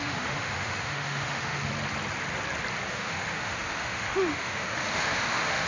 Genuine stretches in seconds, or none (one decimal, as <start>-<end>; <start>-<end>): 1.7-2.9